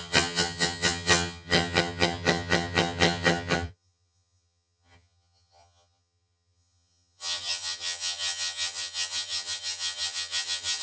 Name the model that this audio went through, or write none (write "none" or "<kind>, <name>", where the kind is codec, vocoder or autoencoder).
vocoder, HiFi-GAN